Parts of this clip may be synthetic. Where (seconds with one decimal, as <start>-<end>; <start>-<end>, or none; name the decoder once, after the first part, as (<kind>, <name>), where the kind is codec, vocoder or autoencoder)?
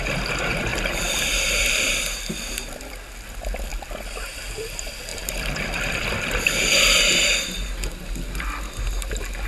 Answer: 0.7-1.9 (vocoder, BigVGAN v2); 5.1-6.4